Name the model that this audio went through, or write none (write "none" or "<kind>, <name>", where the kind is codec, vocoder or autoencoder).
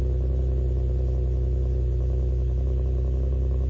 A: none